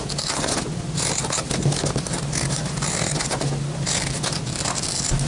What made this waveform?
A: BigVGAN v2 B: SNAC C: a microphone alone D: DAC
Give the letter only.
C